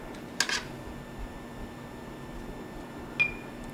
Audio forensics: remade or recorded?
recorded